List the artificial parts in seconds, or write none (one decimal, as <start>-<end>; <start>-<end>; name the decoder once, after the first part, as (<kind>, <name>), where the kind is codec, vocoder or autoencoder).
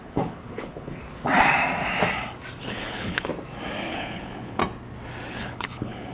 0.0-1.0 (codec, HILCodec); 2.6-3.3; 3.9-4.6; 5.3-6.1